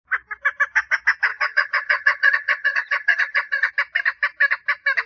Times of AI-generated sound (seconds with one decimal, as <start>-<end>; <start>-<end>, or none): 1.3-3.7